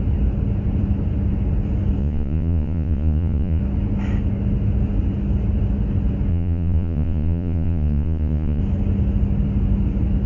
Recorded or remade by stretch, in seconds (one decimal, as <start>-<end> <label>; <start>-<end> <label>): 0.0-2.0 recorded; 2.0-3.6 remade; 3.6-6.3 recorded; 6.3-8.6 remade; 8.6-10.3 recorded